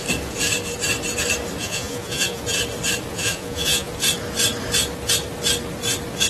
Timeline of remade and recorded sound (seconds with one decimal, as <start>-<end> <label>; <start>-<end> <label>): 0.0-1.6 recorded; 1.6-2.4 remade; 2.4-3.1 recorded; 3.1-3.9 remade; 3.9-6.3 recorded